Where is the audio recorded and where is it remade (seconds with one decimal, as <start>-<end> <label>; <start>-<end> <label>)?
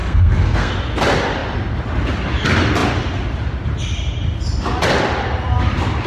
0.0-0.7 remade; 0.7-6.1 recorded